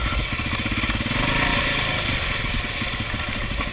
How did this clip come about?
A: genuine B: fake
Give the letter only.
A